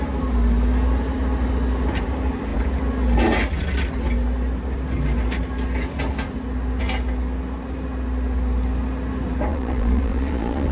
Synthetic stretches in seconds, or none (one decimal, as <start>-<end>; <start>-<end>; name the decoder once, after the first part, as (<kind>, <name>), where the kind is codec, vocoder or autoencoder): 9.5-10.7 (vocoder, Vocos)